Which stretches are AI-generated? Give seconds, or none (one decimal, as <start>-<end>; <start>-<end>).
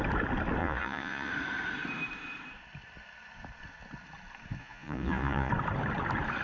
0.6-1.3; 4.6-5.5